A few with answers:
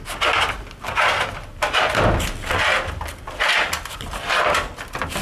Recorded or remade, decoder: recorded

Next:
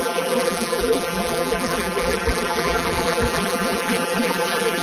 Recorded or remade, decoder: remade, vocoder, BigVGAN v2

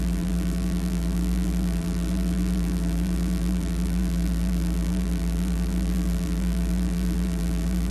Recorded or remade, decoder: remade, vocoder, BigVGAN v2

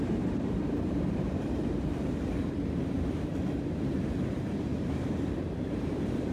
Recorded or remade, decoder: remade, vocoder, BigVGAN v2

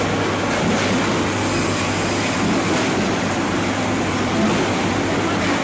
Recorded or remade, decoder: remade, vocoder, BigVGAN v2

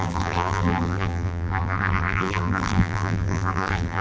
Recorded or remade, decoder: remade, vocoder, BigVGAN v2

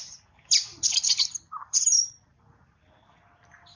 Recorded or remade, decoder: remade, vocoder, BigVGAN v2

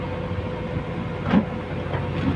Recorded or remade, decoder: recorded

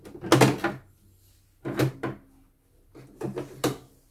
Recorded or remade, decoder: recorded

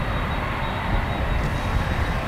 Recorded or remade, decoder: remade, vocoder, BigVGAN v2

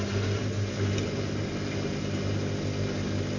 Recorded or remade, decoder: recorded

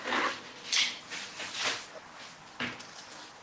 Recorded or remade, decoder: recorded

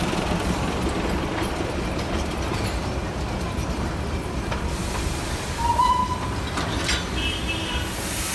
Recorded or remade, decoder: remade, vocoder, BigVGAN v2